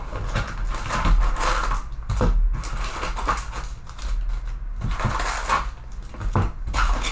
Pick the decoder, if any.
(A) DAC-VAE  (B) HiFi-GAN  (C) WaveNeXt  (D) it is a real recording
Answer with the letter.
D